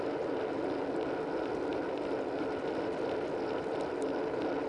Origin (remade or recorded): recorded